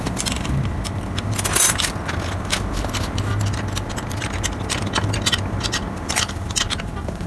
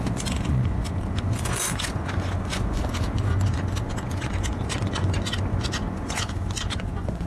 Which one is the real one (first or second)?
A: first